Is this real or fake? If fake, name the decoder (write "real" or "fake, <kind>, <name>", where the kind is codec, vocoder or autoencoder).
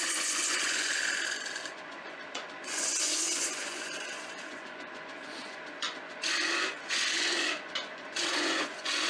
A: fake, vocoder, Vocos